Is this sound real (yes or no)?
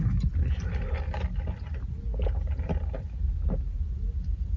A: yes